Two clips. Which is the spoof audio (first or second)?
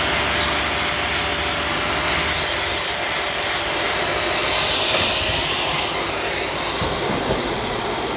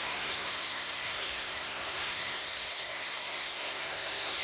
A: second